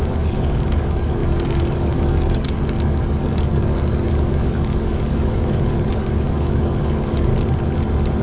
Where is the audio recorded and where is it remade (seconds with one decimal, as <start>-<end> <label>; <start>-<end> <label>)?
0.0-7.3 remade; 7.3-8.2 recorded